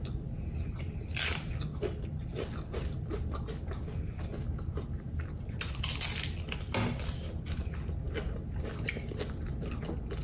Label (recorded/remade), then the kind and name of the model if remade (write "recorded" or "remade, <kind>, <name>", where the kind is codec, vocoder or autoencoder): recorded